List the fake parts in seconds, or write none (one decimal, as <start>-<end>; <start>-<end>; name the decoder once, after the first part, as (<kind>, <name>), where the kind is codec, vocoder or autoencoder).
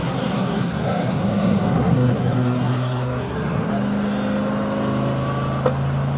0.0-3.7 (codec, SNAC)